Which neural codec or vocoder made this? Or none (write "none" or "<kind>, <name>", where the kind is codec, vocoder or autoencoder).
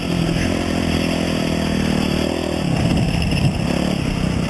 none